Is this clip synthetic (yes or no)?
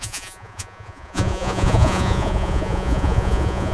yes